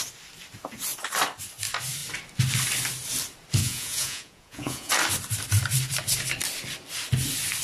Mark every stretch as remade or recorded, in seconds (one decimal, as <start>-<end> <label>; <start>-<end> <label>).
0.0-3.6 recorded; 3.6-4.9 remade; 4.9-7.6 recorded